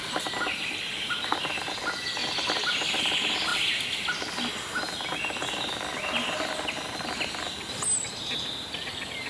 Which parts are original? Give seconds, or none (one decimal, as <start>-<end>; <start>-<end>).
0.0-9.3